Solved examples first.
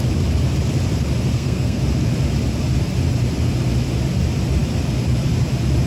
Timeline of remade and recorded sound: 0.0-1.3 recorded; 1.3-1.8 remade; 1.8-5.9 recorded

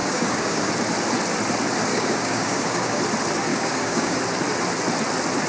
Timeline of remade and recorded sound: 0.0-0.7 remade; 0.7-1.9 recorded; 1.9-3.0 remade; 3.0-3.5 recorded; 3.5-4.2 remade; 4.2-5.5 recorded